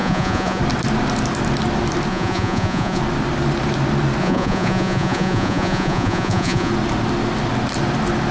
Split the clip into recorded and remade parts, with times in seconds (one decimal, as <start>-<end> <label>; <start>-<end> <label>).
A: 0.0-0.6 remade; 0.6-2.1 recorded; 2.1-3.0 remade; 3.0-4.2 recorded; 4.2-6.7 remade; 6.7-8.3 recorded